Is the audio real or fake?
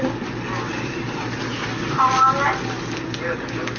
real